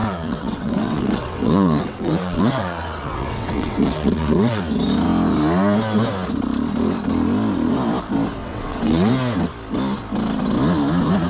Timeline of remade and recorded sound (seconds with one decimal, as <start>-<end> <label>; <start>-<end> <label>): 0.0-4.6 remade; 4.6-8.4 recorded; 8.4-9.1 remade; 9.1-11.3 recorded